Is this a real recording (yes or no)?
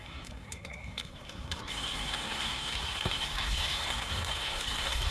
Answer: no